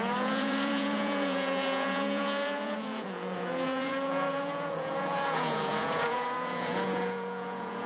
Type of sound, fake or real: fake